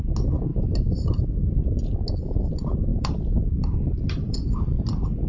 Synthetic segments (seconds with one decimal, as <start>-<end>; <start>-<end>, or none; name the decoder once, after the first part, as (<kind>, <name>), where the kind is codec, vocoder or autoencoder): 2.9-4.8 (vocoder, BigVGAN v2)